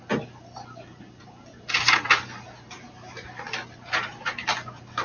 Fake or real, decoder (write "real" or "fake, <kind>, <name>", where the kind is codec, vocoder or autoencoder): real